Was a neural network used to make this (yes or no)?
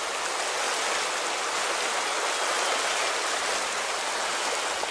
no